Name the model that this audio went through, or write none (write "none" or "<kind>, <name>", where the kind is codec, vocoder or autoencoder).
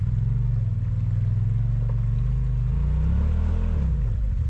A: none